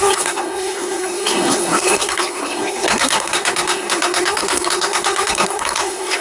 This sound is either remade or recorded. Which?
remade